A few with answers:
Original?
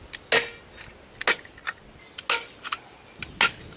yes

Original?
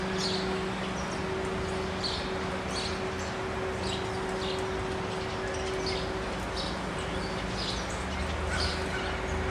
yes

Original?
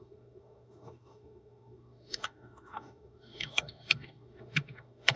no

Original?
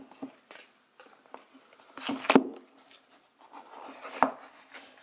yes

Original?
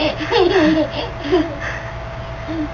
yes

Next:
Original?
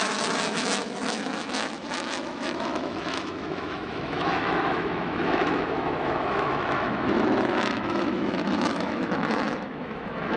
no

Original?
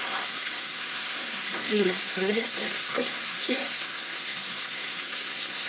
no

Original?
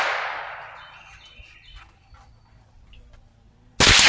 yes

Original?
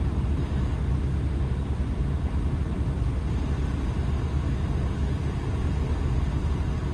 yes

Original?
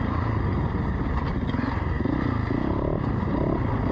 yes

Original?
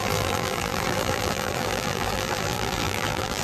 no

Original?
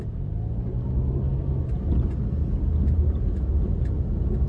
yes